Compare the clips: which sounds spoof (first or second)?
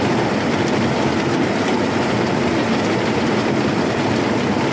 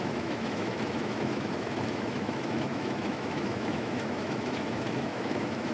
second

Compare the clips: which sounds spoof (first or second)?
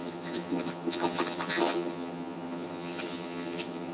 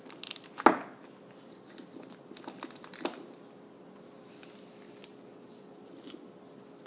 first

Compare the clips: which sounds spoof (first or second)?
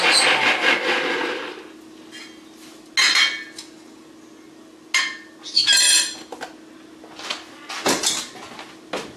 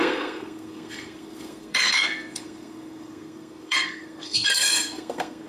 second